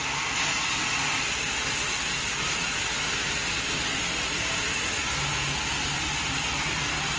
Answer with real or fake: real